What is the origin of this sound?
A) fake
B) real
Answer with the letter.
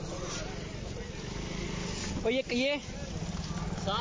B